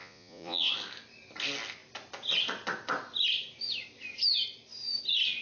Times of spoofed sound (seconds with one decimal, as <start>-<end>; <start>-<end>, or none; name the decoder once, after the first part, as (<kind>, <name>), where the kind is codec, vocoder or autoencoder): 0.0-0.7 (vocoder, Vocos)